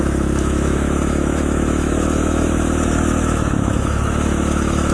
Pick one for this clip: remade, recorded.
remade